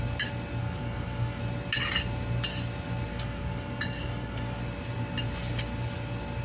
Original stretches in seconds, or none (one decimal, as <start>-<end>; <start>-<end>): 0.0-0.6; 1.4-3.1; 4.6-6.4